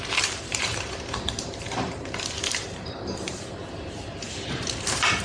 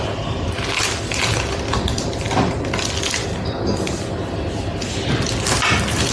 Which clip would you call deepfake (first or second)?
first